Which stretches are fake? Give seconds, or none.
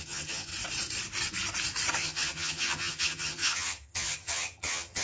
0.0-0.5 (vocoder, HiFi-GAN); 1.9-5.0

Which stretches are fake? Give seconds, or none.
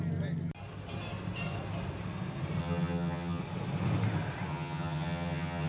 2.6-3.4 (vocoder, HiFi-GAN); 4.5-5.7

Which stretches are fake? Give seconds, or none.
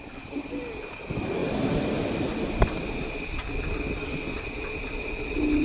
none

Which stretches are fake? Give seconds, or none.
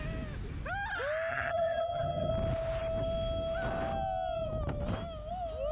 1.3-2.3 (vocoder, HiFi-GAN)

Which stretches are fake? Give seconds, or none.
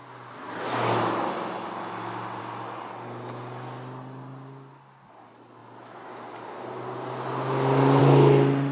none